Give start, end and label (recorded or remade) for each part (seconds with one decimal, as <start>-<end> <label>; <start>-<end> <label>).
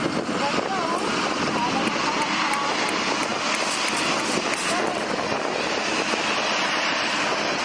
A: 0.0-7.6 recorded